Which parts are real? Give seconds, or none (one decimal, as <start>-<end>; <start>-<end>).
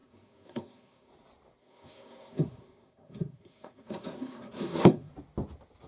1.1-1.6; 5.1-5.9